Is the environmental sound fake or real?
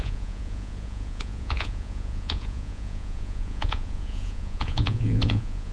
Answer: fake